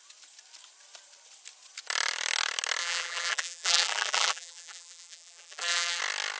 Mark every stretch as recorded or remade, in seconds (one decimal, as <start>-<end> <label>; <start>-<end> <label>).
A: 0.0-2.8 recorded; 2.8-6.0 remade; 6.0-6.4 recorded